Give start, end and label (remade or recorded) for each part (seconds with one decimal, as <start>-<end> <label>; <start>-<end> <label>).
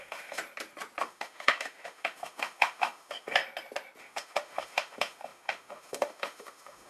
0.0-0.4 remade; 0.4-1.0 recorded; 1.0-3.4 remade; 3.4-4.0 recorded; 4.0-6.9 remade